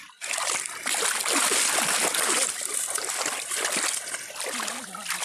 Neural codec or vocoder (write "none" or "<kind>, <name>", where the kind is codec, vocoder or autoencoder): none